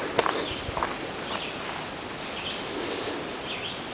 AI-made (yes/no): no